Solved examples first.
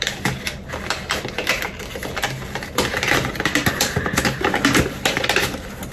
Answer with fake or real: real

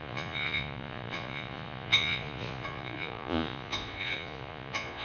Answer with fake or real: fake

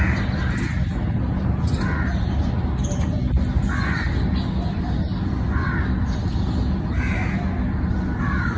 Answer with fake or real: real